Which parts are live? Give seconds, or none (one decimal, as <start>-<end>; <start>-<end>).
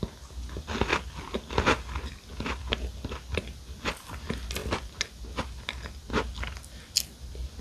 0.0-7.6